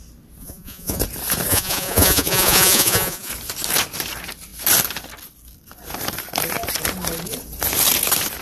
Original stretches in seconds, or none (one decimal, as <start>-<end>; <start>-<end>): 0.0-0.4; 1.0-1.5; 3.3-8.4